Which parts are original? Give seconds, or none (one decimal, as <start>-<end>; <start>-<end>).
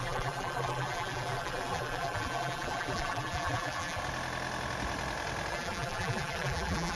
4.0-5.5